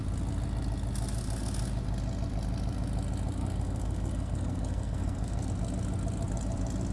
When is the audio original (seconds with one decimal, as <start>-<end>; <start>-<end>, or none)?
0.0-3.4; 5.5-6.9